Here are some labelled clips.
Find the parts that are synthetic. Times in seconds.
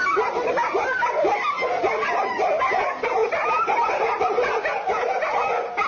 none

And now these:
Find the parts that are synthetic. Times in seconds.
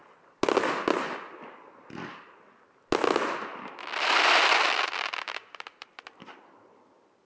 3.5-7.3 (vocoder, BigVGAN v2)